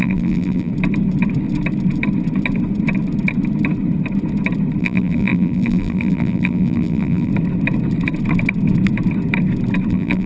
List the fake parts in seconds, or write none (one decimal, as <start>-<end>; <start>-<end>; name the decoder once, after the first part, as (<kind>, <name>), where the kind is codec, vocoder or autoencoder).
0.0-0.7 (vocoder, BigVGAN v2); 4.8-7.3; 9.9-10.3